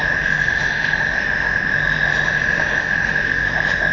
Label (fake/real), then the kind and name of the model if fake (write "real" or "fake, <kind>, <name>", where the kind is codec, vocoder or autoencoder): fake, autoencoder, DAC-VAE